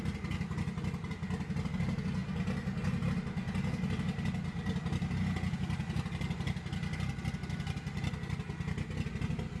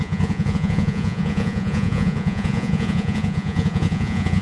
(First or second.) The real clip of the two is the first